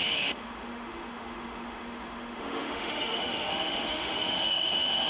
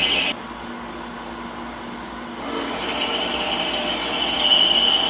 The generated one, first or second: first